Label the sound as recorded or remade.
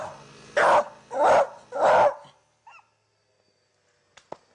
recorded